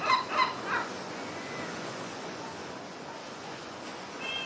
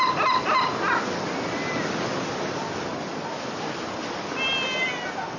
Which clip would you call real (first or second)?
second